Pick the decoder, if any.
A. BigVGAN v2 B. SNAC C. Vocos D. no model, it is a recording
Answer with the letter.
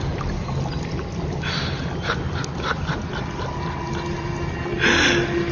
D